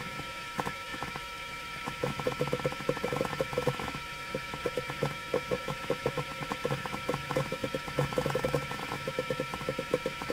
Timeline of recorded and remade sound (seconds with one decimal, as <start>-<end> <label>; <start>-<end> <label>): 0.0-10.3 remade